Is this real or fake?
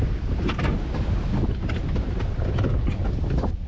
real